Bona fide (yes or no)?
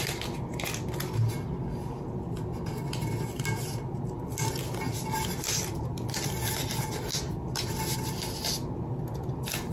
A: yes